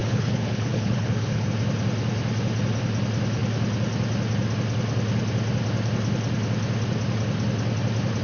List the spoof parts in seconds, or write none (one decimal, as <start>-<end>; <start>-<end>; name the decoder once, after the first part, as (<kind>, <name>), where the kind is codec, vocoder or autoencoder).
0.0-1.5 (codec, HILCodec)